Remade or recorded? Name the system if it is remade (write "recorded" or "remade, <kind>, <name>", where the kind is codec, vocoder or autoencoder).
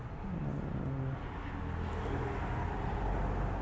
recorded